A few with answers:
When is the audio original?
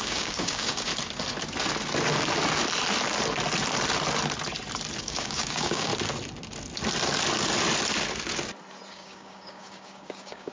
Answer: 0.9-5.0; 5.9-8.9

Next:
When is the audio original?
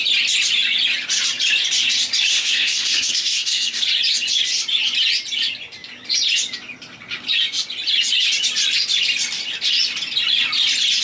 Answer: 0.0-2.3; 3.8-11.0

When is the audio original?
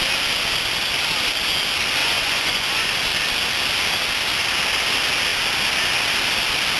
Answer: 0.0-2.0; 2.9-6.8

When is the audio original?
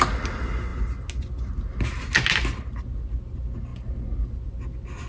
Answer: 0.0-5.1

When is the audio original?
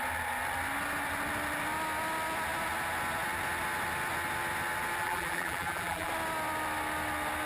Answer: 0.0-5.0; 6.1-7.5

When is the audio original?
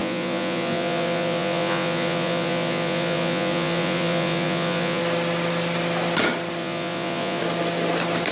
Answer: 5.0-6.6; 7.4-8.3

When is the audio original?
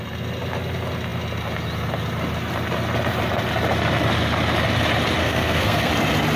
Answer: 0.0-5.2; 5.9-6.4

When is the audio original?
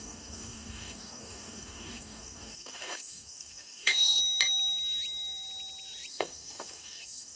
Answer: 4.2-6.1